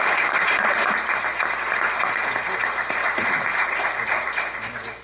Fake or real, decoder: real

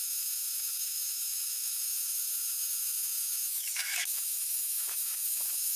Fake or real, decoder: fake, autoencoder, DAC-VAE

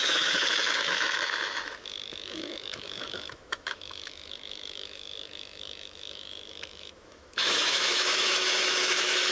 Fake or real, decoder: fake, autoencoder, DAC-VAE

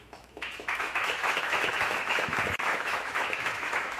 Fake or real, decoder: fake, autoencoder, DAC-VAE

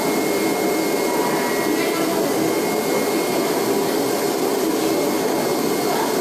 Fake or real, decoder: real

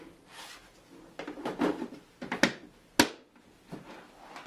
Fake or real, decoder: real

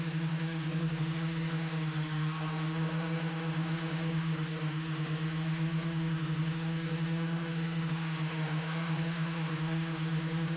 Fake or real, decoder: fake, autoencoder, DAC-VAE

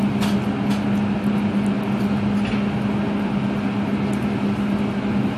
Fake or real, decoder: real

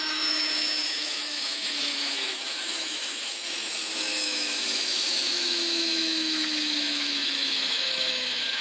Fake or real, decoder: fake, autoencoder, DAC-VAE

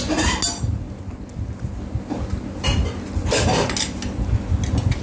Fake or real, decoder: real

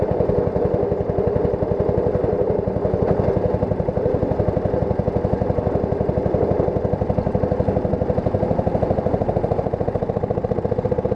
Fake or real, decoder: real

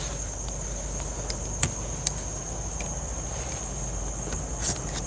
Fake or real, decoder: real